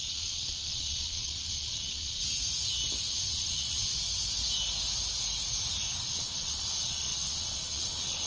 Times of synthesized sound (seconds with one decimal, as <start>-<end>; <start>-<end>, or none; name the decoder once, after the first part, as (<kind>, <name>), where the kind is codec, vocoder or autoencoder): 0.0-2.2 (vocoder, WaveNeXt); 3.3-3.9; 6.1-8.3